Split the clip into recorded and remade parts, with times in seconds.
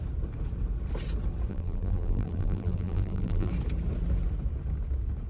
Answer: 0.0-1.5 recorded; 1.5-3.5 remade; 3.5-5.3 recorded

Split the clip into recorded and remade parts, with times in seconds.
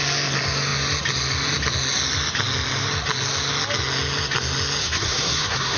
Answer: 0.0-4.8 recorded; 4.8-5.8 remade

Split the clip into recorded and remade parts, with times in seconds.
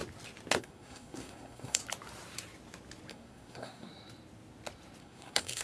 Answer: 0.0-0.6 recorded; 0.6-1.8 remade; 1.8-3.1 recorded; 3.1-3.9 remade; 3.9-5.0 recorded; 5.0-5.6 remade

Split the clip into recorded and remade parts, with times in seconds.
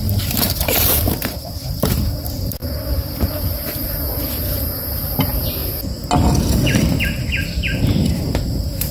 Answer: 0.0-5.6 remade; 5.6-8.1 recorded; 8.1-8.9 remade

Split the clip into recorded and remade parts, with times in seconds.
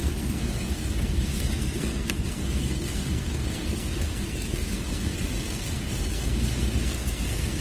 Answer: 0.0-7.6 remade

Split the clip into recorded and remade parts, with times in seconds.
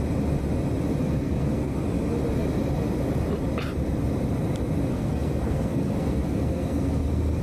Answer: 0.0-1.0 recorded; 1.0-1.8 remade; 1.8-4.9 recorded; 4.9-7.4 remade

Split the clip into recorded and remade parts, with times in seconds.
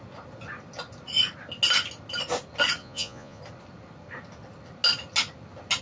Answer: 0.0-2.8 recorded; 2.8-3.4 remade; 3.4-5.8 recorded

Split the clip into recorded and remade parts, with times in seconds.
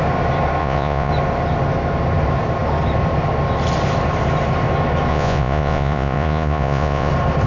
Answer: 0.0-0.6 recorded; 0.6-1.1 remade; 1.1-5.1 recorded; 5.1-7.1 remade; 7.1-7.5 recorded